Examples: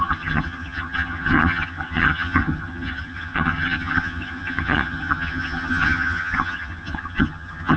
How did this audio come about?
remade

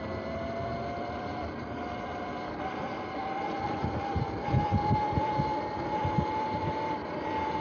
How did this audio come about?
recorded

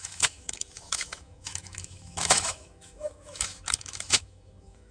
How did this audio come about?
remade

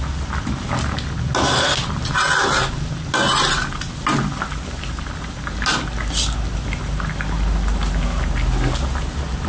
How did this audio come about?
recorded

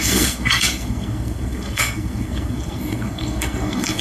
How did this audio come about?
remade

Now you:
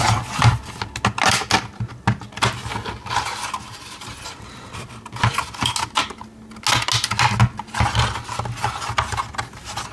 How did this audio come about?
recorded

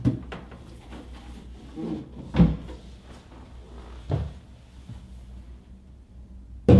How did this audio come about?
recorded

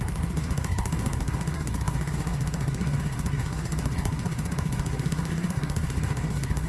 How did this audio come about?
remade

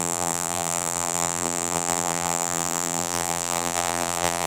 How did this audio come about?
remade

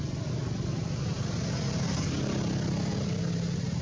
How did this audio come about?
recorded